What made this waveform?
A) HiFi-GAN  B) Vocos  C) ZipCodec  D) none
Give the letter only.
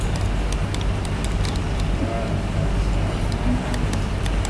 D